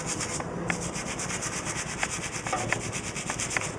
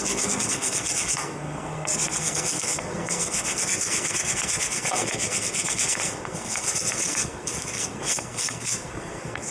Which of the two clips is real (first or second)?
first